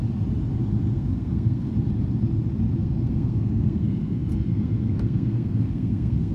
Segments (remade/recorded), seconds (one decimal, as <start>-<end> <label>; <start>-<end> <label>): 0.0-0.9 recorded; 0.9-1.7 remade; 1.7-2.8 recorded; 2.8-6.3 remade